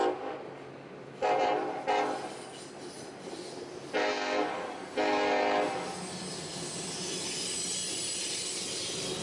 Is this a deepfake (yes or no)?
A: no